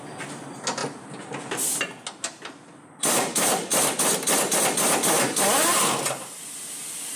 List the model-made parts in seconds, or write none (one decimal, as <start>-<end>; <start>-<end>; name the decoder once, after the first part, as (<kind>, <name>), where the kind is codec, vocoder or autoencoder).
none